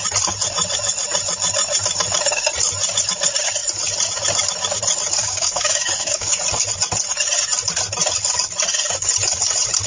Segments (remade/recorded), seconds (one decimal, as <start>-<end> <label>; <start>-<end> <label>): 0.0-5.2 recorded; 5.2-6.4 remade; 6.4-9.9 recorded